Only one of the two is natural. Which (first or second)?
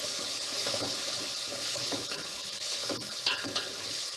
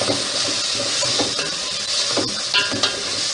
second